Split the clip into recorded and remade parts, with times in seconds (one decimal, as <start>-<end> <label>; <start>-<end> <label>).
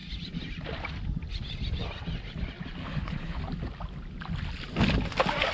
0.0-2.8 recorded; 2.8-3.4 remade; 3.4-5.5 recorded